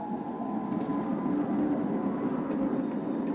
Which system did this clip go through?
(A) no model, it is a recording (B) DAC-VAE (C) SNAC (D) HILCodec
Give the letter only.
A